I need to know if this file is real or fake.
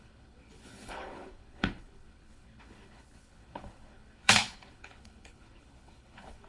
fake